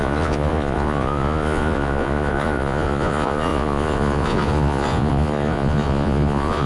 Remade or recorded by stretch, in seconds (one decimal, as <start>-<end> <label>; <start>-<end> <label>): 0.0-6.7 remade